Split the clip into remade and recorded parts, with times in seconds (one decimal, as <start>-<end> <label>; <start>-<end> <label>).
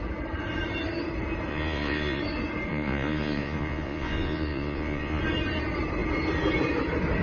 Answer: 0.0-1.5 recorded; 1.5-2.2 remade; 2.2-2.7 recorded; 2.7-5.2 remade; 5.2-7.2 recorded